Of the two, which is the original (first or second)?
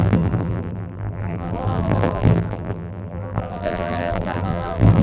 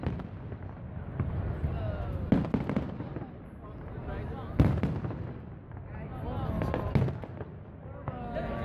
second